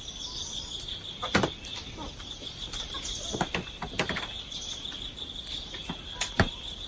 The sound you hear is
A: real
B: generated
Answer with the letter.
A